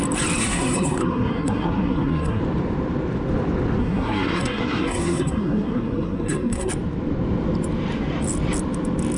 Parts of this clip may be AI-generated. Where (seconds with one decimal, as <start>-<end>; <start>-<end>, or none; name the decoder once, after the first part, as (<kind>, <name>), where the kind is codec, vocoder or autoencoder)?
0.4-2.4 (codec, SNAC); 3.8-6.7